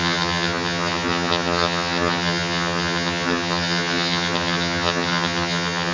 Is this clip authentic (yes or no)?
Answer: no